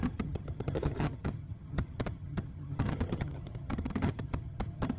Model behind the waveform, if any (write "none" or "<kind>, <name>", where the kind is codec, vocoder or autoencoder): vocoder, HiFi-GAN